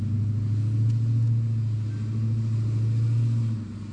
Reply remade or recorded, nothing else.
recorded